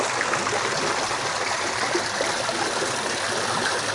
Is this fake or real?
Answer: real